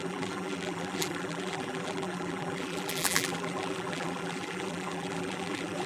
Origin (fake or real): fake